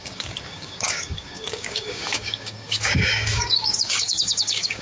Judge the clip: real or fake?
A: fake